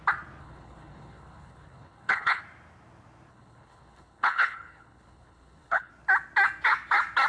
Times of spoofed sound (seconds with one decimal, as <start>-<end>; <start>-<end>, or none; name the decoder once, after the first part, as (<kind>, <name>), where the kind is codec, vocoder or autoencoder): 0.4-2.4 (codec, HILCodec); 3.3-5.9

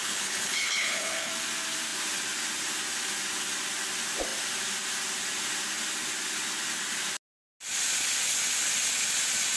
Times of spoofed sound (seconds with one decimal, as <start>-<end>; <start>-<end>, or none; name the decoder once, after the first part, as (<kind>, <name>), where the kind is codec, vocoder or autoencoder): 0.0-1.3 (codec, HILCodec)